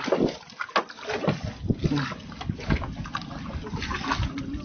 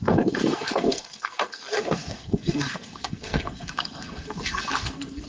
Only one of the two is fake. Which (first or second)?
second